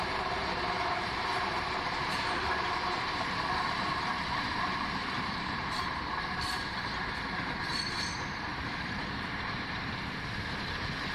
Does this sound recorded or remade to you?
remade